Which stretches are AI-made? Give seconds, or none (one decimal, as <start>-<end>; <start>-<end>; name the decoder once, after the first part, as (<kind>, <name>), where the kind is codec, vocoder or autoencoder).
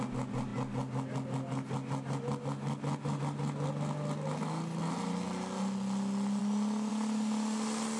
none